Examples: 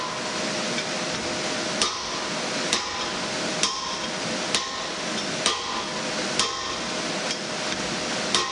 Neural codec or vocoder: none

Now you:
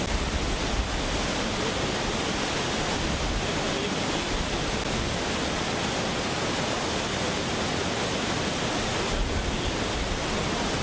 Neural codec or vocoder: none